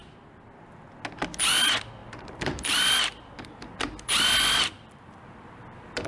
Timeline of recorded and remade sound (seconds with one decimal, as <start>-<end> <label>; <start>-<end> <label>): 0.0-2.0 recorded; 2.0-6.1 remade